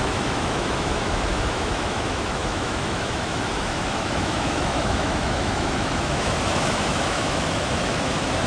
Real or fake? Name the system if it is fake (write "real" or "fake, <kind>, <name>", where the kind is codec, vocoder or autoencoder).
fake, autoencoder, DAC-VAE